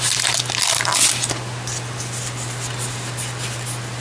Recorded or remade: recorded